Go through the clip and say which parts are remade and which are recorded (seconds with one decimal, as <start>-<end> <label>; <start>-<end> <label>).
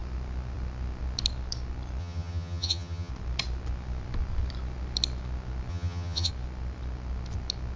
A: 0.0-2.0 recorded; 2.0-3.1 remade; 3.1-5.7 recorded; 5.7-6.3 remade; 6.3-7.8 recorded